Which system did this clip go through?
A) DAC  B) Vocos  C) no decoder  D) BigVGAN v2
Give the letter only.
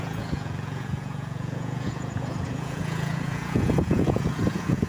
B